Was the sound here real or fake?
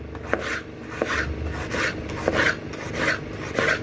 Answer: real